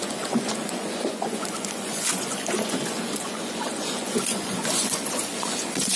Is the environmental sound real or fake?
fake